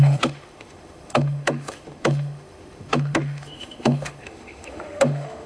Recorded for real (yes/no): no